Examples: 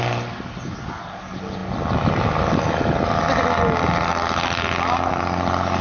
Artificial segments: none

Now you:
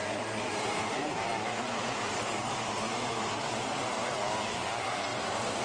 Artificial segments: 0.0-3.4 (vocoder, BigVGAN v2); 5.1-5.6

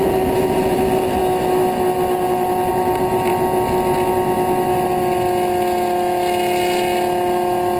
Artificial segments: 0.0-1.2 (vocoder, BigVGAN v2); 2.7-3.3

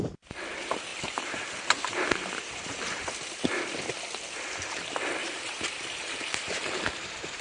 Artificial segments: 0.9-3.1 (vocoder, BigVGAN v2); 5.2-7.4

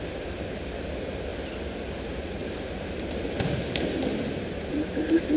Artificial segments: 0.0-1.3 (vocoder, BigVGAN v2); 1.9-2.4; 3.1-5.4

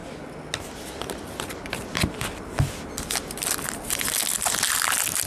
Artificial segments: none

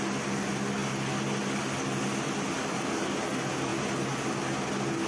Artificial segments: none